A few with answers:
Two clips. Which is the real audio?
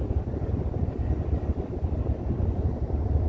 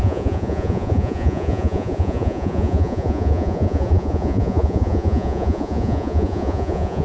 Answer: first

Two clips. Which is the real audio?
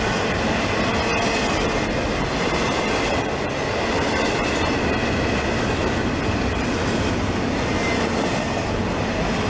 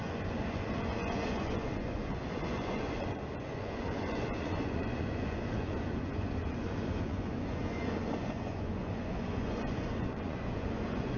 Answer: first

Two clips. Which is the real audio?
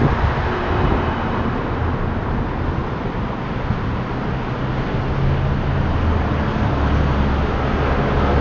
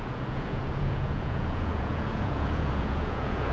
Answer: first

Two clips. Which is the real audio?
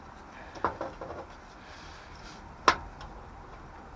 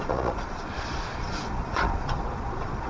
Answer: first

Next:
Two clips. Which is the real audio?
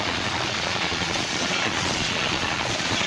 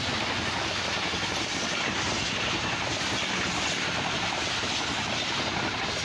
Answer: second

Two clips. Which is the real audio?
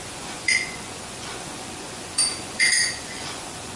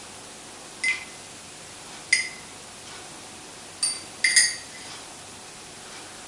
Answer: second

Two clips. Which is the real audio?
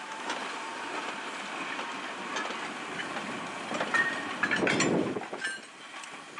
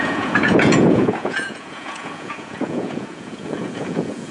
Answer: first